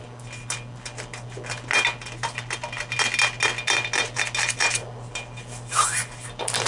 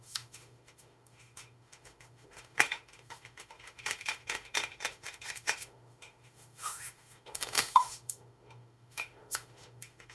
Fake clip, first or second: second